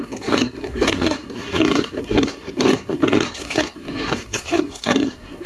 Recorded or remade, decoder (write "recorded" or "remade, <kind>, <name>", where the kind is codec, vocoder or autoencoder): remade, codec, SNAC